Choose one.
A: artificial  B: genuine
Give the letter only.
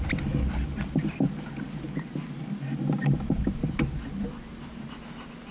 B